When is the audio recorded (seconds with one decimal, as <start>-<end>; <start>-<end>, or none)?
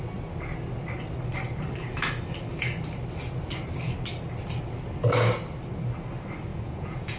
0.0-6.5